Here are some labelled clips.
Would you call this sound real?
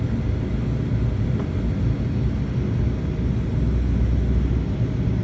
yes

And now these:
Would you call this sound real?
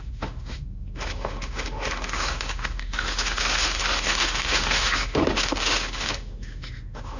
no